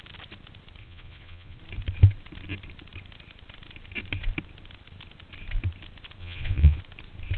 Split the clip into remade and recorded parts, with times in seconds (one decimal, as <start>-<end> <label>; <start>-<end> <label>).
0.0-0.8 recorded; 0.8-1.6 remade; 1.6-6.2 recorded; 6.2-6.8 remade; 6.8-7.4 recorded